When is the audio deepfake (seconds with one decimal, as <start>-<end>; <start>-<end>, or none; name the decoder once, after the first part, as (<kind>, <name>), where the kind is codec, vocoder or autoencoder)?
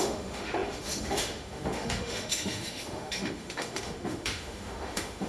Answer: 0.0-5.3 (autoencoder, DAC-VAE)